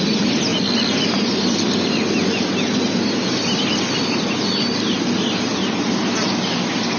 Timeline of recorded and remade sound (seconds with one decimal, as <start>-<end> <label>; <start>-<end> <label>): 0.0-7.0 recorded